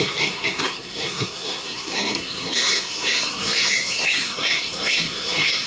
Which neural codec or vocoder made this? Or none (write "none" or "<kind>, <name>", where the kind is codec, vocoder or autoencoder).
codec, SNAC